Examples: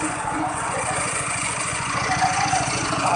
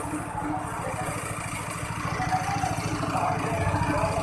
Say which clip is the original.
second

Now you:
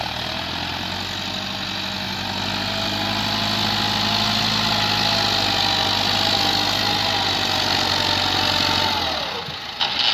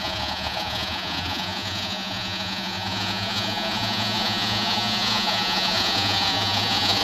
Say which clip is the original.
first